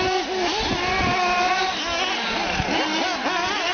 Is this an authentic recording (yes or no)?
yes